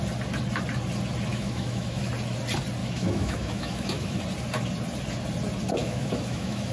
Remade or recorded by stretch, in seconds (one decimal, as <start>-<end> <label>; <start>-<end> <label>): 0.0-1.3 recorded; 1.3-2.1 remade; 2.1-2.8 recorded; 2.8-4.2 remade; 4.2-5.8 recorded; 5.8-6.7 remade